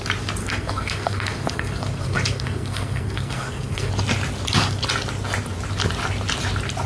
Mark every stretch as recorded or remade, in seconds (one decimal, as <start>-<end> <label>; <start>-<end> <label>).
0.0-0.4 recorded; 0.4-3.9 remade; 3.9-6.9 recorded